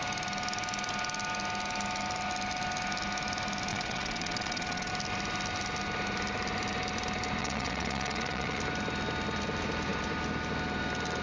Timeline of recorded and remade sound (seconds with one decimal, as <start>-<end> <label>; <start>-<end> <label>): 0.0-3.7 recorded; 3.7-4.9 remade; 4.9-7.4 recorded; 7.4-8.6 remade; 8.6-11.2 recorded